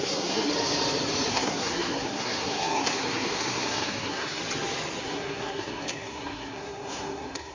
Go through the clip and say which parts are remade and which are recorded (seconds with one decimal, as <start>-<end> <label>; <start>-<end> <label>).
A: 0.0-0.5 remade; 0.5-1.3 recorded; 1.3-4.4 remade; 4.4-5.0 recorded; 5.0-7.5 remade

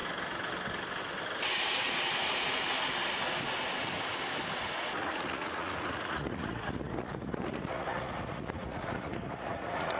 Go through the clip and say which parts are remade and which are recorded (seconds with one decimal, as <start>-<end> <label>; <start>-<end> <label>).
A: 0.0-4.8 recorded; 4.8-10.0 remade

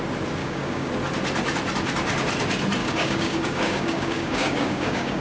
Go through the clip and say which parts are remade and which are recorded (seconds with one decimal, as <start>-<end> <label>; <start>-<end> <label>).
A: 0.0-0.4 recorded; 0.4-0.9 remade; 0.9-2.8 recorded; 2.8-5.2 remade

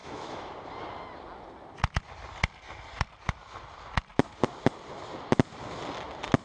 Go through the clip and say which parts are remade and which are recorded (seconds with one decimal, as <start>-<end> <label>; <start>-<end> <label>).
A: 0.0-0.5 remade; 0.5-6.4 recorded

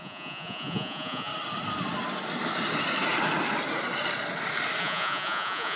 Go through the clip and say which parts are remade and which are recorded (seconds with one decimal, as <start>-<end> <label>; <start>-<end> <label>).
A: 0.0-1.3 remade; 1.3-4.8 recorded; 4.8-5.8 remade

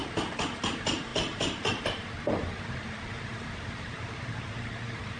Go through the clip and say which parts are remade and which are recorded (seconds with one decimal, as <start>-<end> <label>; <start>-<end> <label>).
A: 0.0-0.7 recorded; 0.7-5.2 remade

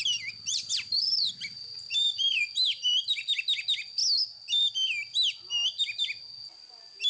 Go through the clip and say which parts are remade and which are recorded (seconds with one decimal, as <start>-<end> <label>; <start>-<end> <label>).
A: 0.0-0.5 recorded; 0.5-2.4 remade; 2.4-7.1 recorded

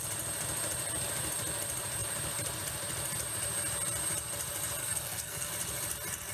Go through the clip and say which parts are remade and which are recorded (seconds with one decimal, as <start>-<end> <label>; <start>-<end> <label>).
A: 0.0-4.8 recorded; 4.8-5.5 remade; 5.5-6.3 recorded